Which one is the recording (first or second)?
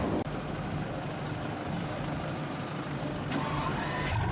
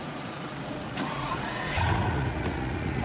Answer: first